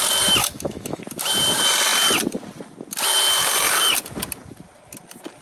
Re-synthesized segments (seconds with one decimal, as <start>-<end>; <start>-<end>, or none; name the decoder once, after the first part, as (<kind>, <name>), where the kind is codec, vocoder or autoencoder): 0.4-1.0 (autoencoder, DAC-VAE)